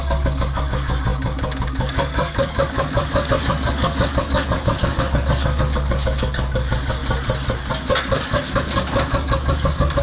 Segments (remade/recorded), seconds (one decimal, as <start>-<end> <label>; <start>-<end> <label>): 0.0-7.0 remade; 7.0-7.9 recorded; 7.9-10.0 remade